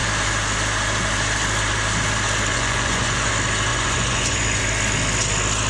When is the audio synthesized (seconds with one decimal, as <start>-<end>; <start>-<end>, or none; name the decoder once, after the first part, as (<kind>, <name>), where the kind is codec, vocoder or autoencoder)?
2.5-3.3 (vocoder, Vocos); 3.7-4.6